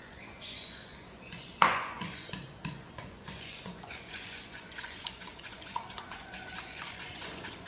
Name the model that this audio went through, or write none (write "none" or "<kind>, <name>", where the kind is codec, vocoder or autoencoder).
vocoder, Vocos